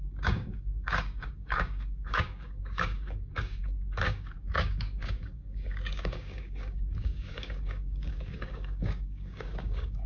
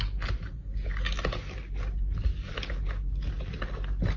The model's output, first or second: first